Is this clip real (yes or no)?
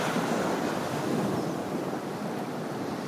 yes